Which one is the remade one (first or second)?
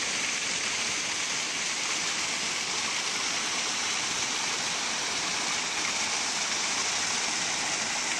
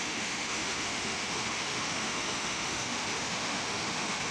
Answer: second